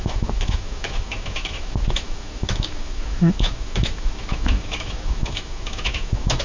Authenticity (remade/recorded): remade